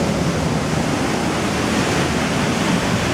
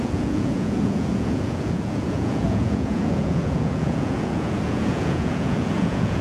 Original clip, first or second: first